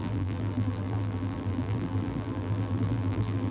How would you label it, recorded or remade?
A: remade